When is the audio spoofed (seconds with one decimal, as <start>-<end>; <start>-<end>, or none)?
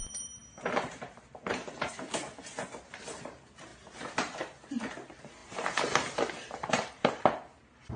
0.0-8.0